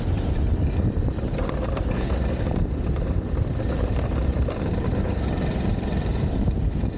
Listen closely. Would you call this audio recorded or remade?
remade